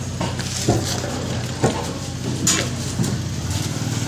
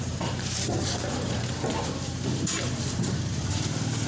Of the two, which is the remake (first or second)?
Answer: second